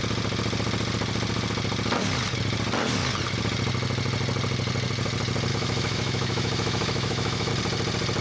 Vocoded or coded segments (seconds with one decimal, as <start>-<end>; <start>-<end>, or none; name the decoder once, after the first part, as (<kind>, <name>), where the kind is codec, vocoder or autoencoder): 5.5-7.5 (autoencoder, DAC-VAE)